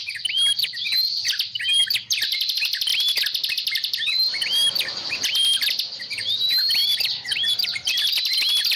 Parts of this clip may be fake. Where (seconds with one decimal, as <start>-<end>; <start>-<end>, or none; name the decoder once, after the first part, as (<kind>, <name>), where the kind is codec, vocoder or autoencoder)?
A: 0.0-2.9 (vocoder, BigVGAN v2); 3.5-8.8